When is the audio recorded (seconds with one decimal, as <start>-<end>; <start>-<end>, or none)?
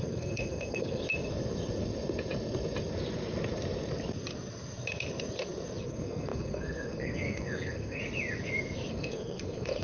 1.0-5.8; 8.0-8.9